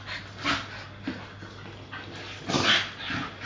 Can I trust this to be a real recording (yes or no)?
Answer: yes